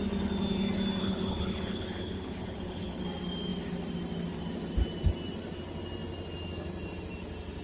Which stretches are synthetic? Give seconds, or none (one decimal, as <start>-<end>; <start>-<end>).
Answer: 1.0-3.0